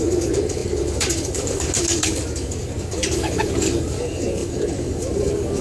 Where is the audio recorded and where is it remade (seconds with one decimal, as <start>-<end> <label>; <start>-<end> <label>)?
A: 0.0-5.6 remade